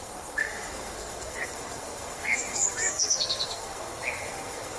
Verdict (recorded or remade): remade